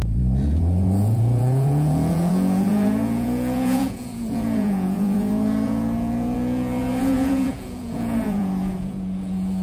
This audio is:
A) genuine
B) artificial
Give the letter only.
B